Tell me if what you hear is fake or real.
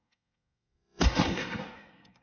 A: fake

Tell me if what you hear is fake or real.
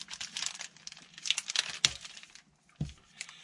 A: real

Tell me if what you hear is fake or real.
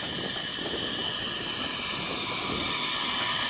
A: real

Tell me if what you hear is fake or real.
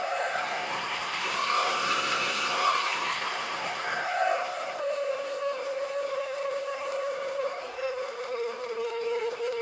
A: fake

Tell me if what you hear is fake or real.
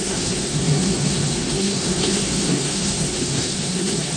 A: fake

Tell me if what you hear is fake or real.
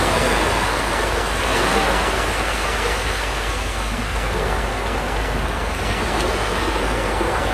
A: fake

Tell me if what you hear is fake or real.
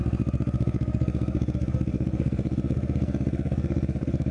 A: fake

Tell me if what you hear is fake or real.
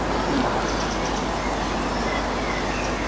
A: real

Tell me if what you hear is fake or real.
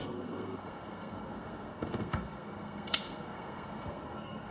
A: fake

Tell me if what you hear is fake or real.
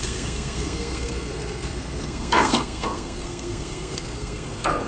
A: fake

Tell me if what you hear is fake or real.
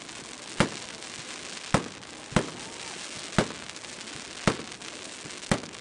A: real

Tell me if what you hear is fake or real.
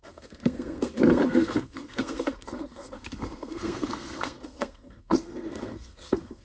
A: fake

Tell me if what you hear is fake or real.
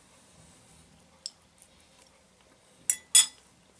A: real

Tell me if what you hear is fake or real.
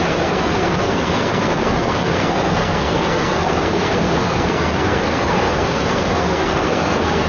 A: fake